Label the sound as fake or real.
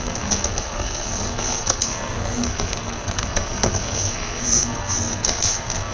fake